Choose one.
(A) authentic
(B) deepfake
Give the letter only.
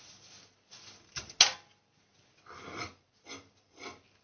A